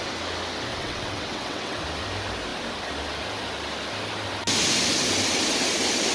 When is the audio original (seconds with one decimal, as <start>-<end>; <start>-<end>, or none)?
0.0-0.7; 1.8-6.1